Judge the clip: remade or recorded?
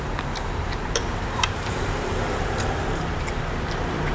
remade